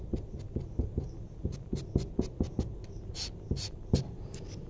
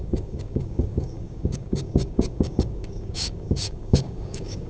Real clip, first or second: first